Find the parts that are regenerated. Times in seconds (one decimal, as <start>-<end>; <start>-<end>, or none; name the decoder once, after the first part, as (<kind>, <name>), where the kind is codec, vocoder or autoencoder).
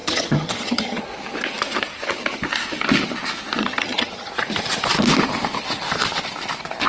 0.0-1.0 (vocoder, HiFi-GAN); 3.6-4.3